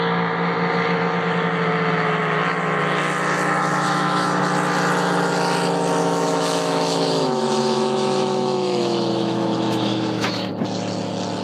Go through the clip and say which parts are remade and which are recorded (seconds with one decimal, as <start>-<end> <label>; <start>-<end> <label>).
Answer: 0.0-3.7 recorded; 3.7-4.4 remade; 4.4-6.0 recorded; 6.0-10.5 remade; 10.5-11.4 recorded